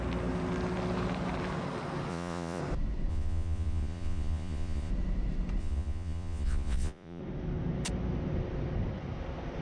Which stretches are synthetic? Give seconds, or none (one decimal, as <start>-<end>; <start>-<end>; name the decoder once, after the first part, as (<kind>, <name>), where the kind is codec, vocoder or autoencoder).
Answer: 2.1-2.6 (vocoder, Vocos); 3.1-4.9; 5.6-7.2